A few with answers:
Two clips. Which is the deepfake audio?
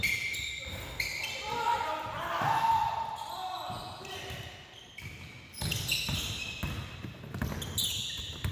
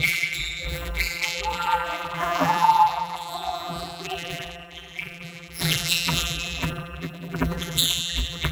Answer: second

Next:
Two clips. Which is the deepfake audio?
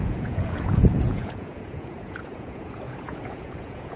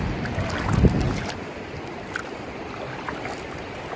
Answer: first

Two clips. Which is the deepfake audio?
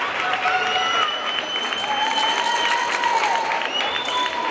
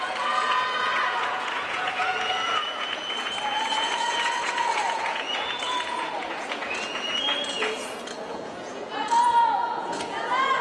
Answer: second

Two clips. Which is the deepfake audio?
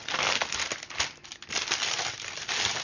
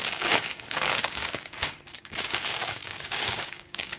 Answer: second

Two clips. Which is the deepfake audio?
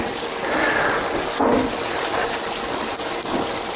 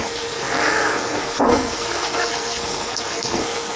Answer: second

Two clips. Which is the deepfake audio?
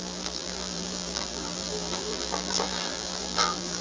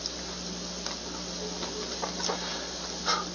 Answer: first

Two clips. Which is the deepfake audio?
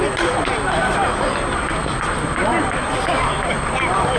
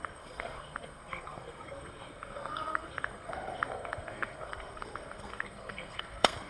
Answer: second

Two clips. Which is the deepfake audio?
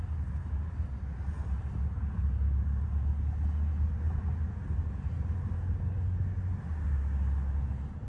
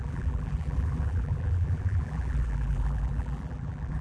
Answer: second